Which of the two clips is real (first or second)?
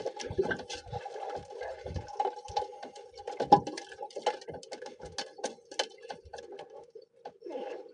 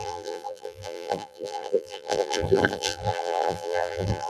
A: first